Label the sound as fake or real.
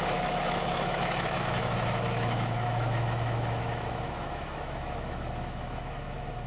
fake